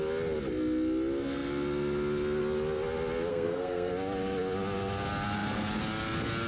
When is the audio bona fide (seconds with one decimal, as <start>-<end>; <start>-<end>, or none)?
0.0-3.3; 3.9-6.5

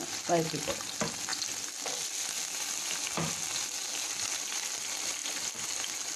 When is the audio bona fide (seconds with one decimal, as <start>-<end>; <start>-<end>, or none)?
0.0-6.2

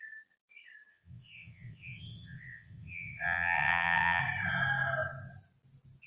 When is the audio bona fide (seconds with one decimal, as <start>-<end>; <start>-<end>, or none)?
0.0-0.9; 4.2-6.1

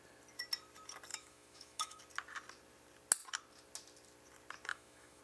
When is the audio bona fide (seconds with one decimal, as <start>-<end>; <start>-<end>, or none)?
0.0-1.1; 2.0-4.7

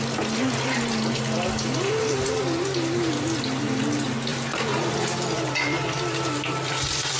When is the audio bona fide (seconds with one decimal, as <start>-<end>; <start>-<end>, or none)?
0.0-4.3